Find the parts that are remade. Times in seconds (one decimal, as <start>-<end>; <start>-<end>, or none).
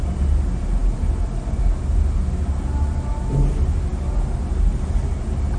none